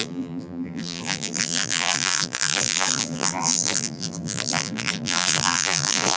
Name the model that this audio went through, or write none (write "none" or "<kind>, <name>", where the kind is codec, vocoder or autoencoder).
vocoder, BigVGAN v2